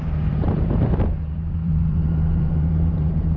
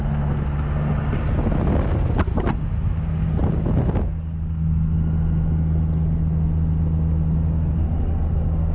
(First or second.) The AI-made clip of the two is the first